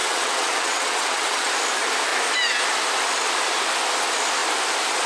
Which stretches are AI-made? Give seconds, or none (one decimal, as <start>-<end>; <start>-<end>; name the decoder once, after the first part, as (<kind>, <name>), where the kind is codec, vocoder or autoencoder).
0.0-1.5 (vocoder, WaveNeXt)